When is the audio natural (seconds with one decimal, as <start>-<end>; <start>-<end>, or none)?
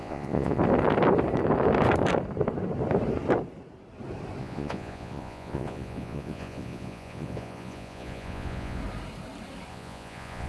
0.6-4.4; 8.8-9.7